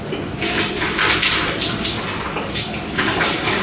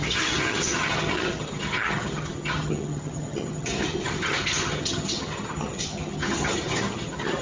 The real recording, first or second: first